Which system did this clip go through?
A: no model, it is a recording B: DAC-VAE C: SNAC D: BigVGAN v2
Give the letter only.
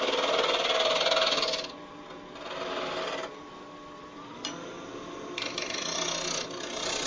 A